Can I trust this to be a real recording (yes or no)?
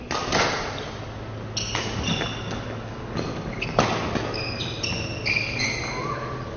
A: yes